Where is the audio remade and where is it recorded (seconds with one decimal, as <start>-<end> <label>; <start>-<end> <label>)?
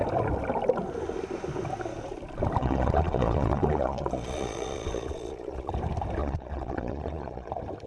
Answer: 0.0-2.6 recorded; 2.6-5.7 remade; 5.7-6.2 recorded; 6.2-7.5 remade; 7.5-7.9 recorded